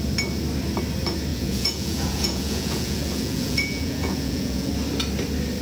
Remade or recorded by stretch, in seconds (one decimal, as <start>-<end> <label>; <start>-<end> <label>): 0.0-1.3 recorded; 1.3-4.7 remade; 4.7-5.6 recorded